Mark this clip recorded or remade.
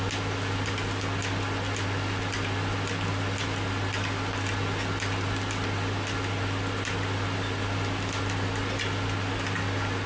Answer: recorded